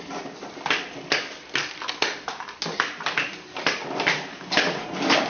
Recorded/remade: recorded